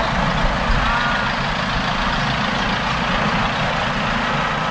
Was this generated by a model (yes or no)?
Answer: no